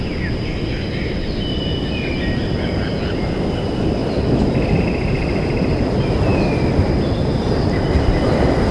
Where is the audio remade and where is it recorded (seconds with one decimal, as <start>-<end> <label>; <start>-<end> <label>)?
0.0-4.0 recorded; 4.0-4.8 remade; 4.8-8.7 recorded